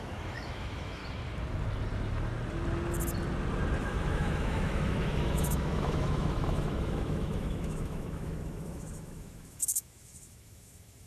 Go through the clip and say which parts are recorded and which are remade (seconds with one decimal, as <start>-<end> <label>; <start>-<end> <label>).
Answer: 0.0-1.0 remade; 1.0-3.8 recorded; 3.8-11.1 remade

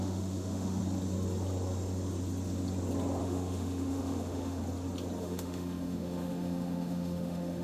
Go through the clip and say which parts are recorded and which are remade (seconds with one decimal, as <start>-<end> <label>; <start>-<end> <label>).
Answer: 0.0-0.8 remade; 0.8-3.2 recorded; 3.2-4.6 remade; 4.6-5.2 recorded; 5.2-7.6 remade